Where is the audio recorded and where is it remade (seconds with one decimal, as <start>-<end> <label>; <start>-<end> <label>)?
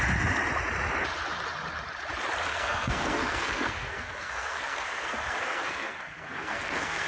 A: 0.0-2.5 recorded; 2.5-7.1 remade